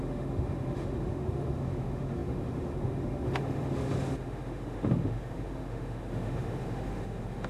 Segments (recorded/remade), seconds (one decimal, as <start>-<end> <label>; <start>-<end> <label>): 0.0-7.5 remade